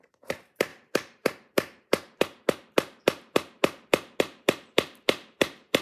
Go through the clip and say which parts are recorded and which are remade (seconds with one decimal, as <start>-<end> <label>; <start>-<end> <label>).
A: 0.0-5.8 remade